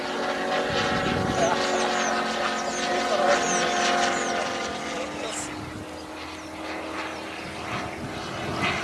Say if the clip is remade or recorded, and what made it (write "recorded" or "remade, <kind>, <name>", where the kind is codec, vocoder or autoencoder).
recorded